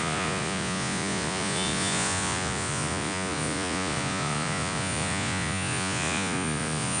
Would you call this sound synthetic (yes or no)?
yes